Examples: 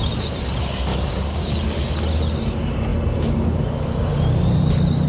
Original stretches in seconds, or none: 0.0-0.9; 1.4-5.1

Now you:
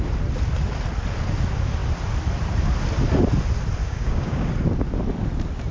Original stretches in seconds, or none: 0.0-3.8; 4.5-5.7

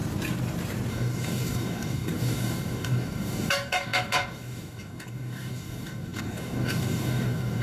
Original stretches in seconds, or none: 0.0-0.9